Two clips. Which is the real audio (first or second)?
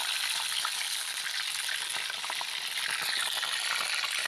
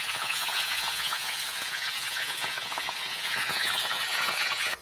first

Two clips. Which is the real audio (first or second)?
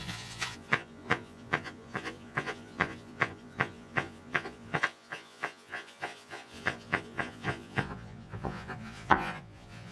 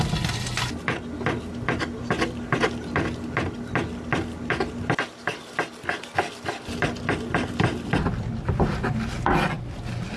second